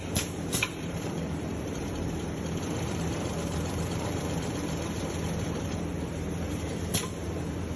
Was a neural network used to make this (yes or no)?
yes